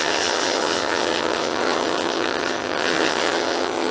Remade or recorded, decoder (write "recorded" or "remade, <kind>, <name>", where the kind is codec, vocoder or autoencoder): remade, vocoder, HiFi-GAN